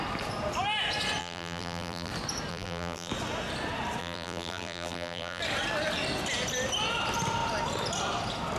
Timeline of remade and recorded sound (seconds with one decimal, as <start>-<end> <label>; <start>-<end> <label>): 0.0-1.2 recorded; 1.2-2.1 remade; 2.1-2.5 recorded; 2.5-3.1 remade; 3.1-4.0 recorded; 4.0-5.4 remade; 5.4-8.6 recorded